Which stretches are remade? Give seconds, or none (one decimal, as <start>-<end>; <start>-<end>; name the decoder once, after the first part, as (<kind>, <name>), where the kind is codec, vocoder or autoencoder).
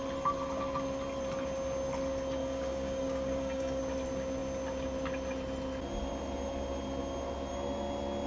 2.4-3.8 (codec, DAC)